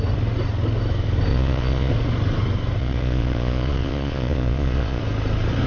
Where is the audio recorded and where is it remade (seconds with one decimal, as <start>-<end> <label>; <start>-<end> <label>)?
0.0-1.3 recorded; 1.3-1.9 remade; 1.9-2.8 recorded; 2.8-5.0 remade; 5.0-5.7 recorded